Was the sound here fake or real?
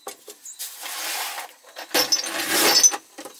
real